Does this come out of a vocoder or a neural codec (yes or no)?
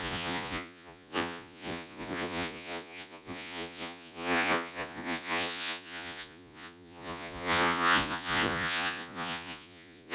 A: yes